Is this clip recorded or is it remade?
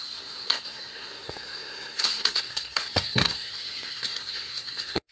remade